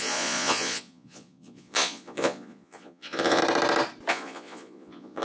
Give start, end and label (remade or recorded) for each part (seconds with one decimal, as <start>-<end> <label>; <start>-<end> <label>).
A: 0.0-3.4 remade; 3.4-4.1 recorded; 4.1-5.2 remade